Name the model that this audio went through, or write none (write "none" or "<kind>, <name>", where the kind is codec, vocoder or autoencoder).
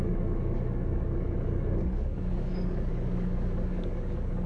codec, DAC